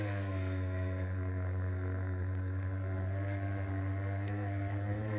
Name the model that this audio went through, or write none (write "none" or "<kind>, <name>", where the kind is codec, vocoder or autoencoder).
codec, SNAC